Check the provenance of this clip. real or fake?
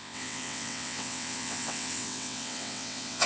fake